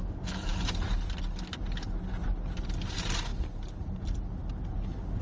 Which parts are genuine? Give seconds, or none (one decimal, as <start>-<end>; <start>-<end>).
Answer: 0.0-5.2